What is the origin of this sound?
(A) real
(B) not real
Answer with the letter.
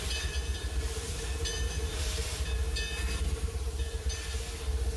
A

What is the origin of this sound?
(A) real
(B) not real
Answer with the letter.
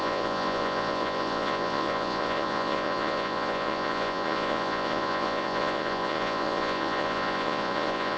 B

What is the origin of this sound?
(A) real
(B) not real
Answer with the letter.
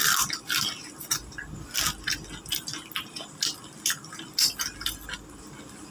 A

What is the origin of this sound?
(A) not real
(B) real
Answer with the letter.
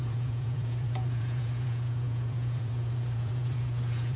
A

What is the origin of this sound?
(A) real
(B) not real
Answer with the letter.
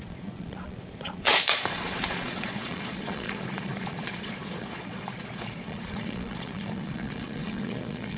B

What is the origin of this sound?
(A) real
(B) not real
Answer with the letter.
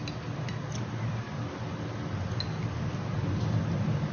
A